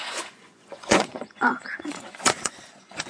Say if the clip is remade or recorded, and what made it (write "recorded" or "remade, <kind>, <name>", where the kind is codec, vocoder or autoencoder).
remade, vocoder, Vocos